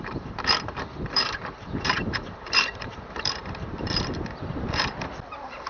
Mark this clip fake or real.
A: fake